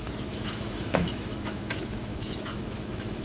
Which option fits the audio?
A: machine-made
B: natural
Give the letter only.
A